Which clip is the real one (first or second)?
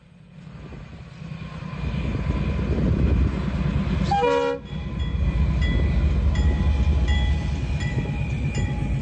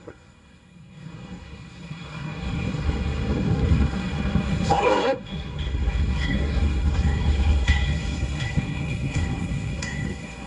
first